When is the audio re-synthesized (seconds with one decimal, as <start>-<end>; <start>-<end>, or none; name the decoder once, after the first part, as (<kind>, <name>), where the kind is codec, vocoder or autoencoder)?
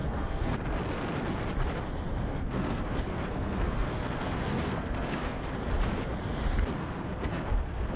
0.0-0.6 (codec, SNAC); 2.3-5.4; 6.7-8.0